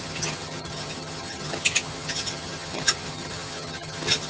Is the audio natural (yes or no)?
no